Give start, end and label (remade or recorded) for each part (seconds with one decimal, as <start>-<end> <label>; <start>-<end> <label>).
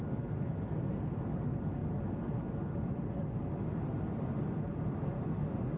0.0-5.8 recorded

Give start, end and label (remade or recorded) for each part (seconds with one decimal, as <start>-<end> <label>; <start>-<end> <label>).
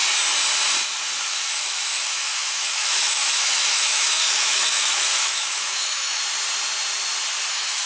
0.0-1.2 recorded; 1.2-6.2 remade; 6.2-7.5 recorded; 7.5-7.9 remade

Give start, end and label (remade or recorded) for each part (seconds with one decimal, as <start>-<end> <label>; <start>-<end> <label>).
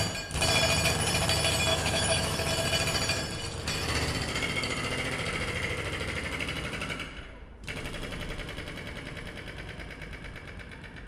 0.0-1.7 recorded; 1.7-2.5 remade; 2.5-11.1 recorded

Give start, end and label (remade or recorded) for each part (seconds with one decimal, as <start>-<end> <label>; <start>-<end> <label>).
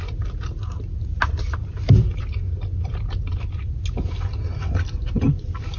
0.0-5.8 recorded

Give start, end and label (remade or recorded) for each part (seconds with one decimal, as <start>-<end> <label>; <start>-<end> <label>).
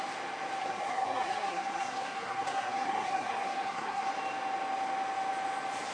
0.0-0.6 recorded; 0.6-4.1 remade; 4.1-5.9 recorded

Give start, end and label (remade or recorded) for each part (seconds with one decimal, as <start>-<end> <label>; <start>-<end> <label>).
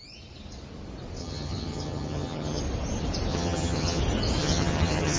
0.0-1.2 recorded; 1.2-2.6 remade; 2.6-3.3 recorded; 3.3-4.0 remade; 4.0-4.4 recorded; 4.4-5.2 remade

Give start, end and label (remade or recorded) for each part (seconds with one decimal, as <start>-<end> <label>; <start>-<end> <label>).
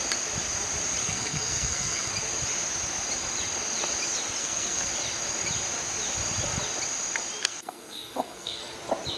0.0-1.0 recorded; 1.0-2.1 remade; 2.1-4.4 recorded; 4.4-4.9 remade; 4.9-7.4 recorded; 7.4-8.6 remade; 8.6-9.2 recorded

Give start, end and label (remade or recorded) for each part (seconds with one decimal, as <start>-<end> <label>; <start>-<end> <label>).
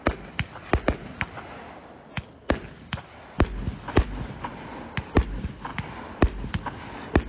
0.0-7.3 recorded